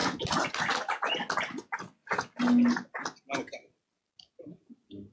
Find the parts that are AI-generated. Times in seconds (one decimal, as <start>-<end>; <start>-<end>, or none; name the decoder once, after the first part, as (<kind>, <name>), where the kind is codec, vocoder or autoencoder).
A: none